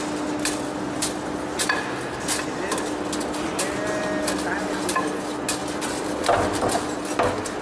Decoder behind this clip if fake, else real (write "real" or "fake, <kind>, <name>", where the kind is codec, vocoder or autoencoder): real